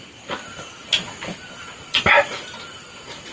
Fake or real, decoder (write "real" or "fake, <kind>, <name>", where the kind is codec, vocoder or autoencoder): real